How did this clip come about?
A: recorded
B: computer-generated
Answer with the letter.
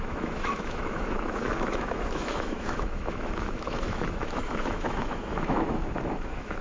B